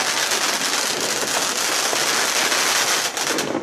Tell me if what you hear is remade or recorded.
recorded